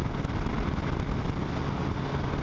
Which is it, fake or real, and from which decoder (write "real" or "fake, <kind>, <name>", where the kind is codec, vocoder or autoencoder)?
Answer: real